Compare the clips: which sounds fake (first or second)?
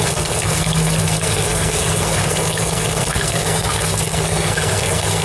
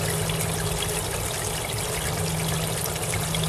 first